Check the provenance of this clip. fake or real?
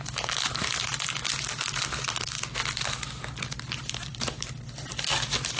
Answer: real